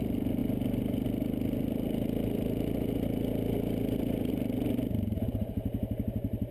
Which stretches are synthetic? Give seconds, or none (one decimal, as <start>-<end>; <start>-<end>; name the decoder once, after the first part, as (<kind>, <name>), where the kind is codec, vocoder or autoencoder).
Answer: 0.0-0.4 (vocoder, BigVGAN v2); 4.3-6.5